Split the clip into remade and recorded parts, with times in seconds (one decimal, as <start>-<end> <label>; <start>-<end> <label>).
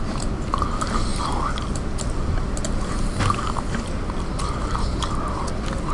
0.0-5.9 recorded